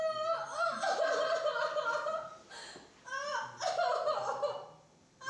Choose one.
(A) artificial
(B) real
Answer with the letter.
B